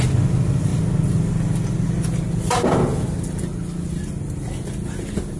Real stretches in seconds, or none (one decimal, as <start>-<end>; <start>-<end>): 0.0-5.4